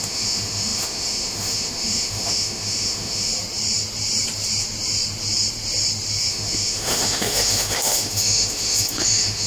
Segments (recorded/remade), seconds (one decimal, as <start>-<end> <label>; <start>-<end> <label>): 0.0-3.3 remade; 3.3-6.3 recorded; 6.3-9.5 remade